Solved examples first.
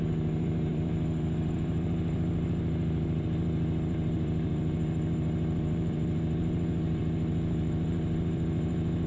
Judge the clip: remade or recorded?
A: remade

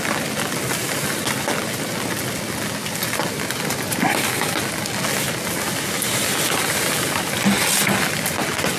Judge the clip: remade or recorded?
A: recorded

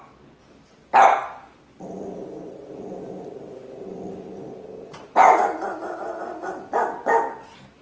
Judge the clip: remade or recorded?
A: recorded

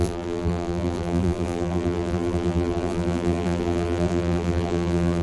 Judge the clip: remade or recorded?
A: remade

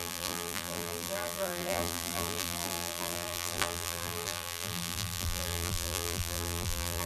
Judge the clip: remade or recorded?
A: remade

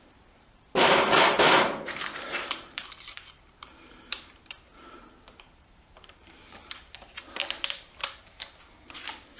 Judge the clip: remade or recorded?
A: remade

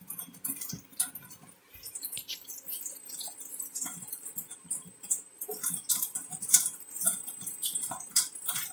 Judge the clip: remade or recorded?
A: remade